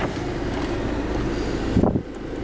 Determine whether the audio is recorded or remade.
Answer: recorded